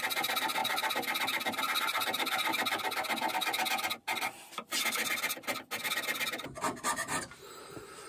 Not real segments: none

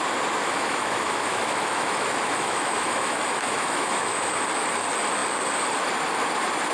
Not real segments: 0.4-4.4

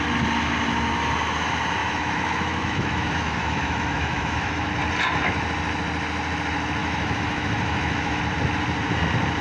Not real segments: 1.8-4.7; 6.8-8.2

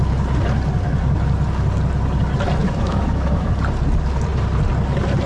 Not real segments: 2.6-3.5

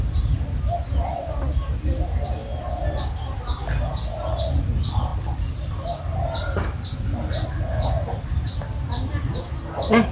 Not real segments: none

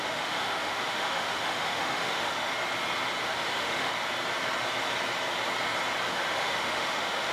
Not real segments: 0.0-2.5; 3.2-3.9; 6.1-7.3

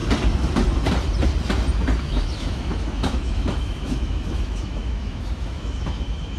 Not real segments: 2.0-6.4